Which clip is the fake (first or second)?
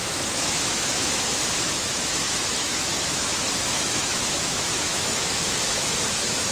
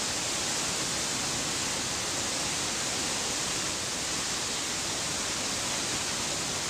first